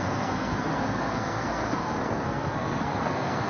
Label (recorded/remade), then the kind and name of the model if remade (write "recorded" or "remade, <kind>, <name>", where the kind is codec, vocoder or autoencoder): remade, codec, SNAC